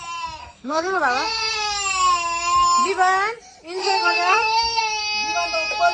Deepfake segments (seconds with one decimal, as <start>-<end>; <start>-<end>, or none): 0.4-1.0; 3.8-4.8